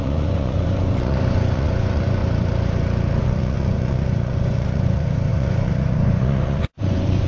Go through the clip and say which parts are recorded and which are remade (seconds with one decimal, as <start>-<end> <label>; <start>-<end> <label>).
0.0-2.2 remade; 2.2-3.2 recorded; 3.2-7.3 remade